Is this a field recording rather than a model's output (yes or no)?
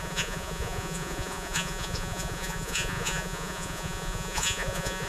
no